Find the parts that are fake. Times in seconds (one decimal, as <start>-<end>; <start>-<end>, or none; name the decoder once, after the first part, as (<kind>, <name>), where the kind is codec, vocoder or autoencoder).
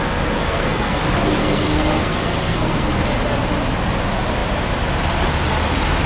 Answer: 0.4-1.0 (codec, SNAC); 1.4-2.9